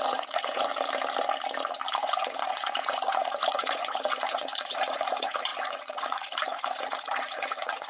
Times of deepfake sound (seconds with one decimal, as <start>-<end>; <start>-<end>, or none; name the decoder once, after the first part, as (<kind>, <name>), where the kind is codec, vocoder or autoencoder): 0.0-0.7 (vocoder, Vocos); 1.9-7.9